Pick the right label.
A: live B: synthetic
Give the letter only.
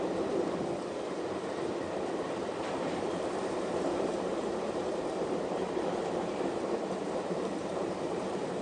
B